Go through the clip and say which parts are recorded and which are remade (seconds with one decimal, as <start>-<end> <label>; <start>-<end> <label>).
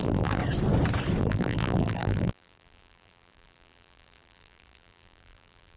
0.0-0.4 remade; 0.4-1.2 recorded; 1.2-5.8 remade